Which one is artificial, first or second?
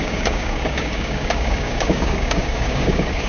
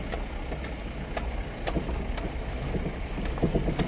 first